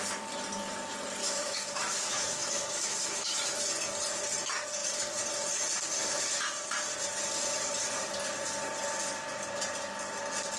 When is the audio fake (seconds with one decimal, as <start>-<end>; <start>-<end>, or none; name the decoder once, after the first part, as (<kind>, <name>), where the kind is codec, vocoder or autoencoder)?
1.2-3.6 (autoencoder, DAC-VAE)